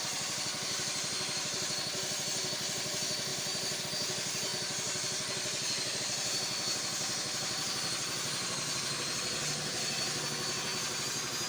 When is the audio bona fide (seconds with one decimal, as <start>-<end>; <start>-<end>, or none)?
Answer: 0.0-11.5